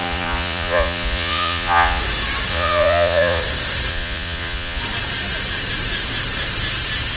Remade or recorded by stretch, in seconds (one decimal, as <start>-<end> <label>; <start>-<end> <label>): 0.0-2.0 remade; 2.0-2.5 recorded; 2.5-3.4 remade; 3.4-3.9 recorded; 3.9-4.8 remade; 4.8-7.2 recorded